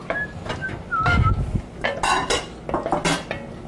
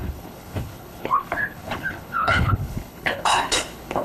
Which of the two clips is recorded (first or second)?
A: first